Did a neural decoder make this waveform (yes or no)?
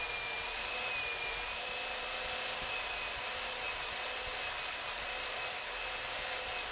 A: no